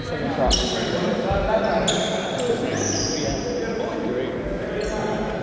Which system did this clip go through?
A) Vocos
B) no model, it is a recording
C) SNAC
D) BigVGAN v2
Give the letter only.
B